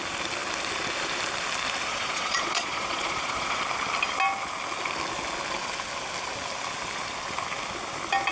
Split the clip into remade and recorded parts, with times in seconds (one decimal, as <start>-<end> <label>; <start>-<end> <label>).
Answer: 0.0-1.9 recorded; 1.9-3.6 remade; 3.6-8.3 recorded